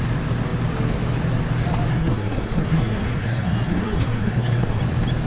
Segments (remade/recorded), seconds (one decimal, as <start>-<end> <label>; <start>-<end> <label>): 0.0-1.9 recorded; 1.9-4.8 remade; 4.8-5.3 recorded